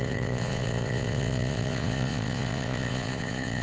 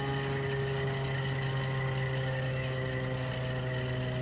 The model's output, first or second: first